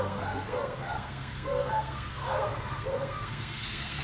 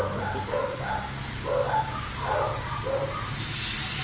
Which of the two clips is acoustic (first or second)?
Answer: second